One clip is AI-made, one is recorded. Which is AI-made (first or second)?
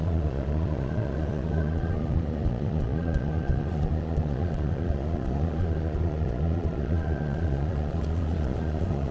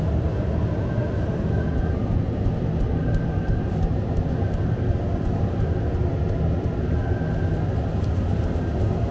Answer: first